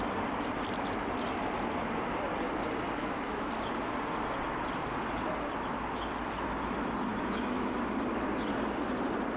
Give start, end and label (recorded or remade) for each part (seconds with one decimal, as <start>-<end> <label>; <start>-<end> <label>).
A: 0.0-3.0 recorded; 3.0-3.5 remade; 3.5-7.1 recorded; 7.1-7.9 remade; 7.9-9.4 recorded